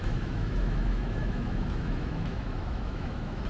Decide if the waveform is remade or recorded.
remade